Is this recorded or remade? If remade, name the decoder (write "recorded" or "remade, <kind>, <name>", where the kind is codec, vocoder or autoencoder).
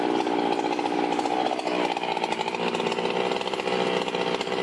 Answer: recorded